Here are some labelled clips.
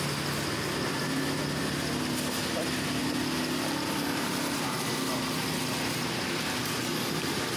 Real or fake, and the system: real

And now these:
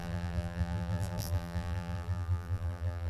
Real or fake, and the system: fake, vocoder, BigVGAN v2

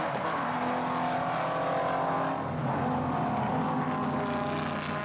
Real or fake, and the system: real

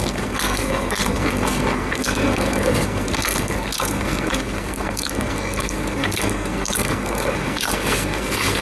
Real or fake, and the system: fake, codec, SNAC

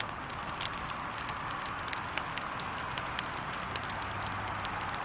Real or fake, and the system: real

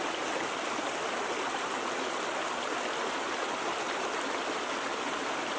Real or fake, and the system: real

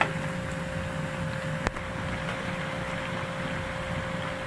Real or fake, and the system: real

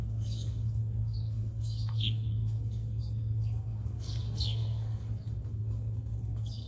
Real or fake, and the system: fake, codec, SNAC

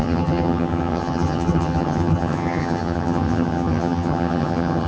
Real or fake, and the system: fake, vocoder, HiFi-GAN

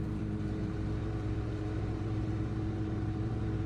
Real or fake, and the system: fake, vocoder, BigVGAN v2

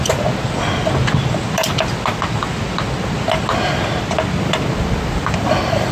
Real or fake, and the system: real